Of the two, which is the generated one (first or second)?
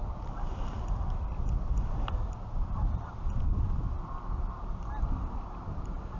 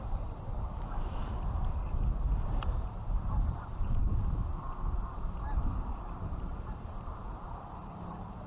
second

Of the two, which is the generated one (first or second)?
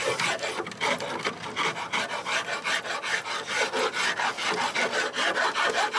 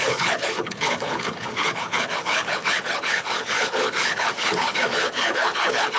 second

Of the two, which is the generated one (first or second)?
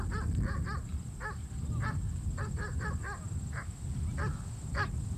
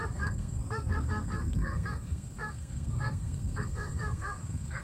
second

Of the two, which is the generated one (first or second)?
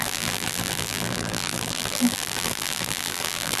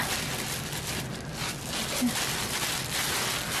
first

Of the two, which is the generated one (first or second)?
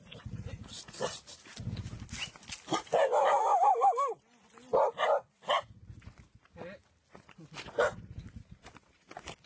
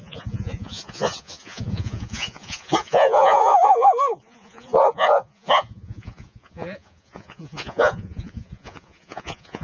second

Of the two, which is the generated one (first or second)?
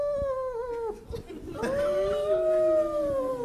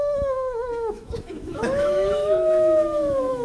second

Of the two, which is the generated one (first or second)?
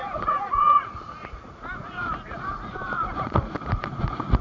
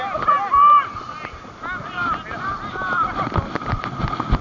first